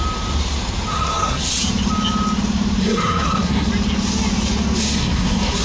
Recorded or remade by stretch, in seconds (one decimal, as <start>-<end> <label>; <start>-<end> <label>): 0.0-0.9 recorded; 0.9-1.5 remade; 1.5-2.8 recorded; 2.8-3.7 remade; 3.7-4.8 recorded; 4.8-5.6 remade